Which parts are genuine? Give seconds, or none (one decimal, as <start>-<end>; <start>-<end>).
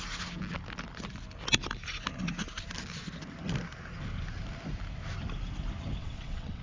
0.0-6.0